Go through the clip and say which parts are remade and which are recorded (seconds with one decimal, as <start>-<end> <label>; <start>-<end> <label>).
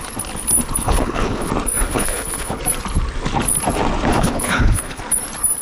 0.0-0.8 recorded; 0.8-1.5 remade; 1.5-1.9 recorded; 1.9-2.6 remade; 2.6-4.1 recorded; 4.1-5.0 remade; 5.0-5.6 recorded